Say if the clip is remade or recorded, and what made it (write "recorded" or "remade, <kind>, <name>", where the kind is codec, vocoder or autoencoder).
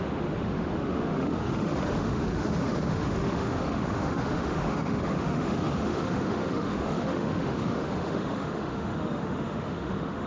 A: remade, autoencoder, DAC-VAE